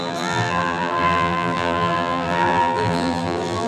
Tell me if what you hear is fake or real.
fake